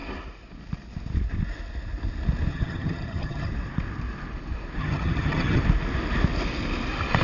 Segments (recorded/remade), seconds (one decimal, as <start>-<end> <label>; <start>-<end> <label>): 0.0-2.5 recorded; 2.5-3.5 remade; 3.5-4.8 recorded; 4.8-5.6 remade; 5.6-7.2 recorded